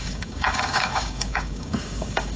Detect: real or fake fake